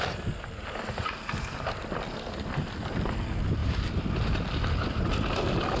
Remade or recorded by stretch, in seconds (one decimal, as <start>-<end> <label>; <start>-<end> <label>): 0.0-5.8 recorded